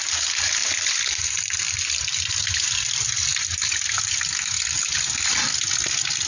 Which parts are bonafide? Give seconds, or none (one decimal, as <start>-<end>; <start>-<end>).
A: 0.0-0.6; 2.3-3.3; 5.3-6.3